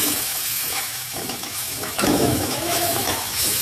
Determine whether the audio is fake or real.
fake